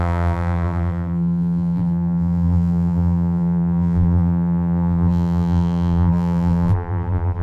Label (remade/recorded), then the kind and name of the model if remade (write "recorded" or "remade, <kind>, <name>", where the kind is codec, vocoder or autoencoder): remade, vocoder, BigVGAN v2